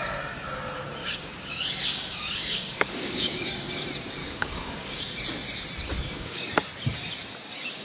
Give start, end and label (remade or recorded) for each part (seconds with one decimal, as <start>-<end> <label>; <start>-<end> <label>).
0.0-1.0 recorded; 1.0-3.8 remade; 3.8-4.2 recorded; 4.2-5.0 remade; 5.0-6.0 recorded; 6.0-6.5 remade; 6.5-7.8 recorded